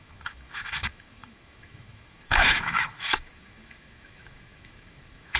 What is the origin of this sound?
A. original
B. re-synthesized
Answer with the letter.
B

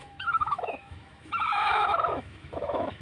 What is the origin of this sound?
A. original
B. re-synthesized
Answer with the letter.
B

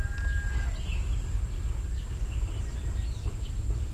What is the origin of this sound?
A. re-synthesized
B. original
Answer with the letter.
B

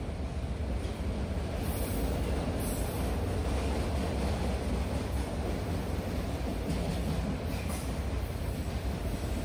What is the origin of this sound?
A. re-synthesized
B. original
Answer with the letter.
B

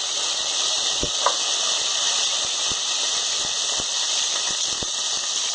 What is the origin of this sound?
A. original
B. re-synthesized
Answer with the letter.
A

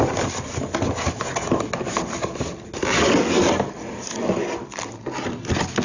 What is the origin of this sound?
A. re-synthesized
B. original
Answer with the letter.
B